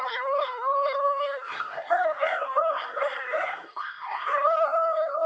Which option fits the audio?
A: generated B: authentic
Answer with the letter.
A